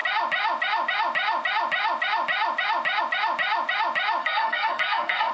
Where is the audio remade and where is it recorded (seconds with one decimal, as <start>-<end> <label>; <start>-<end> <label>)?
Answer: 0.0-4.2 recorded; 4.2-5.3 remade